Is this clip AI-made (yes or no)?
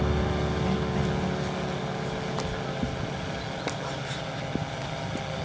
no